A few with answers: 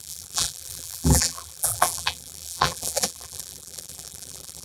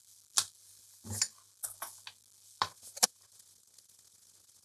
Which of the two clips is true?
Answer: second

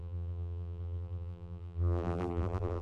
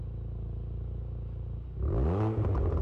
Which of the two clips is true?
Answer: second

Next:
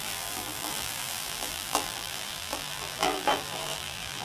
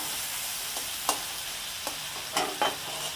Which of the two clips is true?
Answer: second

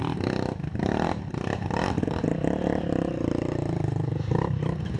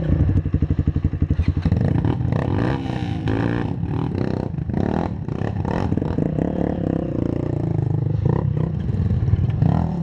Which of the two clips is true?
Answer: second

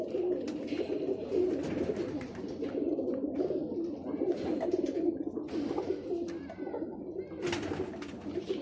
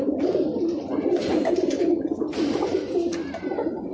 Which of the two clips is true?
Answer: first